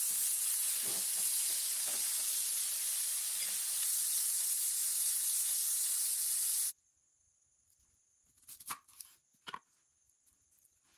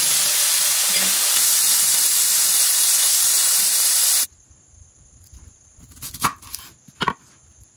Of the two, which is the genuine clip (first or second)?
first